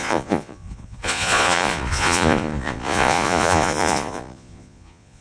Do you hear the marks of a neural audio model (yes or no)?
yes